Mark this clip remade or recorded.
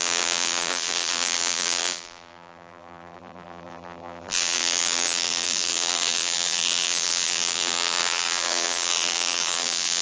remade